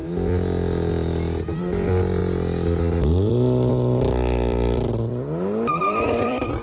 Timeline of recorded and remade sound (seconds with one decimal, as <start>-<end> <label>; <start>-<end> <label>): 0.0-0.9 recorded; 0.9-2.2 remade; 2.2-3.7 recorded; 3.7-5.1 remade; 5.1-5.8 recorded; 5.8-6.6 remade

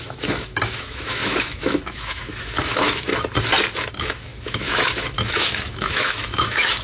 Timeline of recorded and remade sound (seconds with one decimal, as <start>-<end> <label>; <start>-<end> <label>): 0.0-3.1 remade; 3.1-3.9 recorded; 3.9-6.8 remade

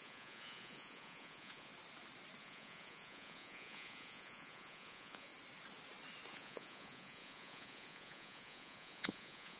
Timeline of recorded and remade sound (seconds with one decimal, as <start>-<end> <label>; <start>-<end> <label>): 0.0-1.7 remade; 1.7-2.4 recorded; 2.4-5.3 remade; 5.3-6.3 recorded; 6.3-9.6 remade

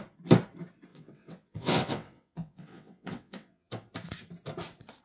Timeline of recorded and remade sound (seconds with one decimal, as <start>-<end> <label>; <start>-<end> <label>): 0.0-0.9 recorded; 0.9-3.7 remade; 3.7-5.0 recorded

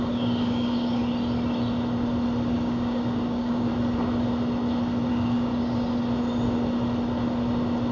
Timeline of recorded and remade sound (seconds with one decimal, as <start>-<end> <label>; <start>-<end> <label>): 0.0-1.0 remade; 1.0-2.5 recorded; 2.5-3.7 remade; 3.7-5.1 recorded; 5.1-5.5 remade; 5.5-7.9 recorded